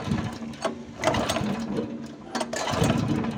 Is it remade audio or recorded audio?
recorded